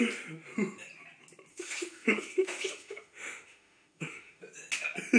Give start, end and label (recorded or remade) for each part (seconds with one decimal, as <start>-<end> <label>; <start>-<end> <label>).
0.0-1.5 recorded; 1.5-4.4 remade; 4.4-5.2 recorded